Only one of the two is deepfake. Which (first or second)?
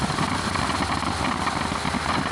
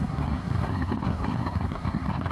second